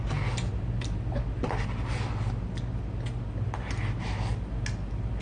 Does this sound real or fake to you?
real